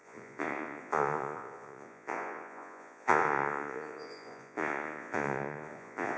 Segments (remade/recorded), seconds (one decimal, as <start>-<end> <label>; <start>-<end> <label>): 0.0-6.2 remade